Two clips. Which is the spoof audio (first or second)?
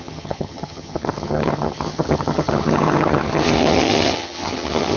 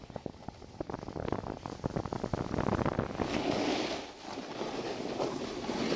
first